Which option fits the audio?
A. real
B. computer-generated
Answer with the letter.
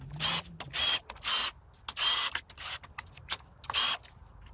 A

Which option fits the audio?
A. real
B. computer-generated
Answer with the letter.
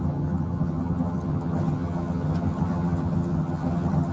B